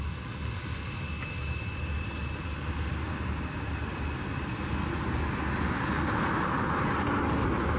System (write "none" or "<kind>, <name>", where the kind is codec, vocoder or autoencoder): none